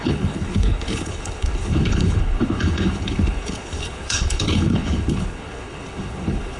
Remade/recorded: remade